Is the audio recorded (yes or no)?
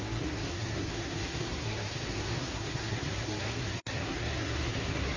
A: no